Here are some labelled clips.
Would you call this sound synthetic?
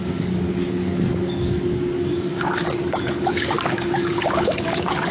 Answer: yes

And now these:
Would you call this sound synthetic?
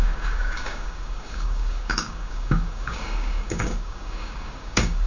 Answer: yes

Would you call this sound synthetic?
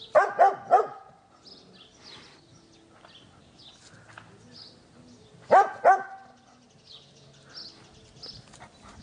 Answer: no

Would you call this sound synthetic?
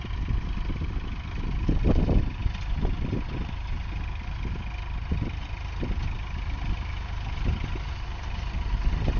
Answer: no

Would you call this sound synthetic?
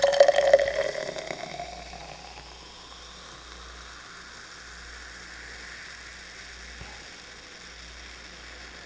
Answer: no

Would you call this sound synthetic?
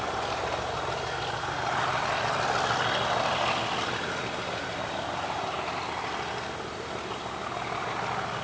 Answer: no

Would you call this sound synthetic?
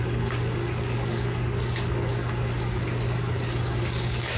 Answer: yes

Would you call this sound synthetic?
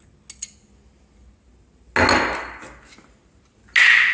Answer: no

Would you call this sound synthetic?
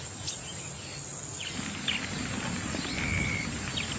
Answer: no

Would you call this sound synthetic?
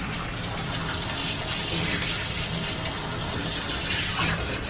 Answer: no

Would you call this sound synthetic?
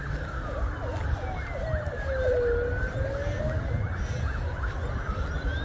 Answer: no